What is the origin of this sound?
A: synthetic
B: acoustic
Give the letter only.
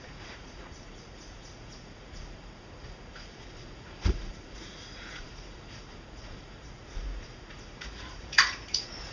A